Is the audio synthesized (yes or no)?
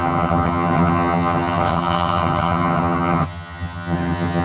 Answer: yes